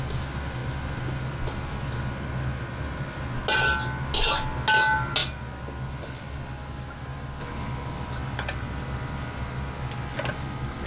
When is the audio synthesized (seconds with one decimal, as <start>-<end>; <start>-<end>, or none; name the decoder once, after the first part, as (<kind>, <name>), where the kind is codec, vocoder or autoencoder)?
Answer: none

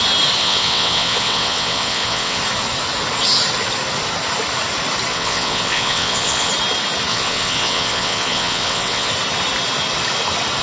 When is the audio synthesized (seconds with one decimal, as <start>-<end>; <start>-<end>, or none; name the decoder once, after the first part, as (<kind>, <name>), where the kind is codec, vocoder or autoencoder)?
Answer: 0.4-2.4 (vocoder, WaveNeXt); 5.1-6.5; 7.1-9.1

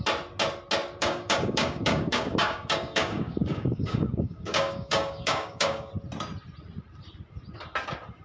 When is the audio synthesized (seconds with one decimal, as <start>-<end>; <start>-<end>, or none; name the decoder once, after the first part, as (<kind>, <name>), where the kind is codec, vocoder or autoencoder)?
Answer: 1.0-5.9 (codec, DAC)

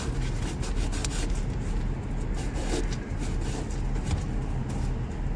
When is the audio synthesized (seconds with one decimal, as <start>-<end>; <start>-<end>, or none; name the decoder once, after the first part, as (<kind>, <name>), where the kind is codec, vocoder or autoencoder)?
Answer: none